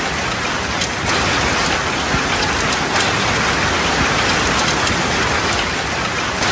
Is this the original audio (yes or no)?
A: yes